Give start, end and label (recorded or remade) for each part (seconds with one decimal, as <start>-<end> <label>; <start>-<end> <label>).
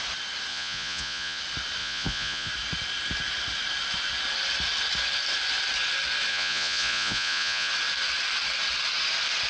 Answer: 0.0-0.5 recorded; 0.5-1.4 remade; 1.4-1.8 recorded; 1.8-2.5 remade; 2.5-6.3 recorded; 6.3-7.7 remade; 7.7-9.5 recorded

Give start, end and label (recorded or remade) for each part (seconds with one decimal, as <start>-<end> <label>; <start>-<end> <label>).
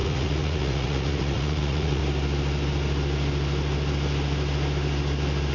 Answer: 0.0-2.0 remade; 2.0-5.5 recorded